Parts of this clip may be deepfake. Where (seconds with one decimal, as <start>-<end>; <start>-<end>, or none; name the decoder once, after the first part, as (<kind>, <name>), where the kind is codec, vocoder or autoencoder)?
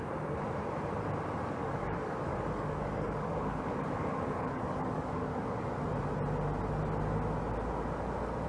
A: 1.6-5.7 (codec, DAC)